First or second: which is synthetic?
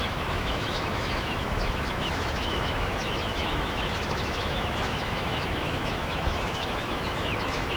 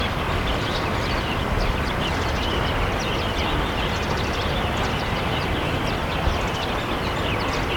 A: first